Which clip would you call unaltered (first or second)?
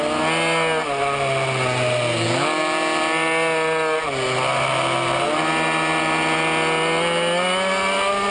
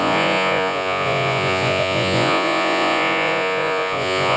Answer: first